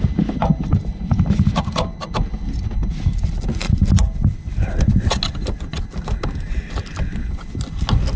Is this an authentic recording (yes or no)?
yes